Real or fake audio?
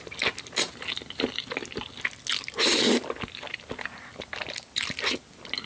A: real